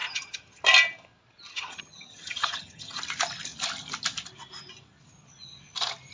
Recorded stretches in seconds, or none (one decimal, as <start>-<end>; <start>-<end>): 0.6-1.5; 3.0-6.1